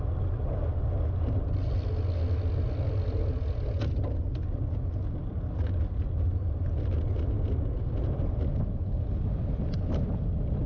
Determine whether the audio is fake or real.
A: real